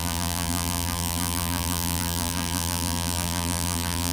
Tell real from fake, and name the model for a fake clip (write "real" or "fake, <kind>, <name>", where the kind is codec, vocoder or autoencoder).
fake, vocoder, BigVGAN v2